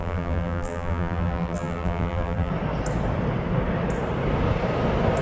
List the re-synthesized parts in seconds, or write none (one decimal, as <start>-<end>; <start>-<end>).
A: 0.0-2.5